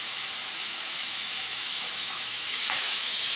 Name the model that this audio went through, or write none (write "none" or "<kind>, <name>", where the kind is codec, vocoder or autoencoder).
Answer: autoencoder, DAC-VAE